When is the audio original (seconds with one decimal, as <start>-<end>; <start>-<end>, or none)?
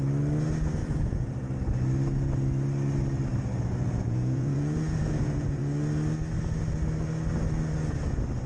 0.0-0.8; 1.3-3.8; 5.6-8.5